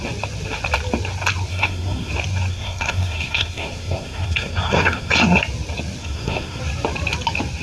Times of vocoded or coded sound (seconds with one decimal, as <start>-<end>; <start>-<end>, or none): 1.5-2.1; 2.5-5.1; 6.0-6.6